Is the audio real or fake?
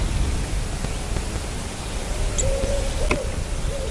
real